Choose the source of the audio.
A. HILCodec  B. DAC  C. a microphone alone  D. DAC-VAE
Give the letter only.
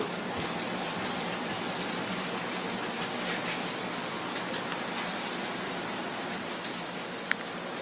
C